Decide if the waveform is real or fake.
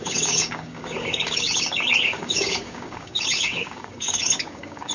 fake